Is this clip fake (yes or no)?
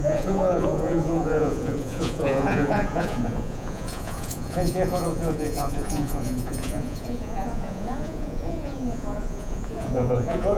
yes